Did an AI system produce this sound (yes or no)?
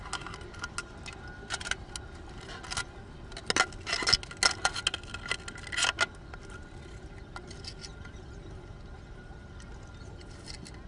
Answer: no